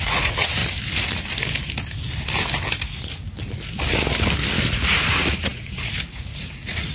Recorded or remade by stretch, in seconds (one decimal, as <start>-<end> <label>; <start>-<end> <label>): 0.0-0.6 remade; 0.6-4.7 recorded; 4.7-6.9 remade